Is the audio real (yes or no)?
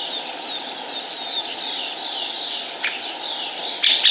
yes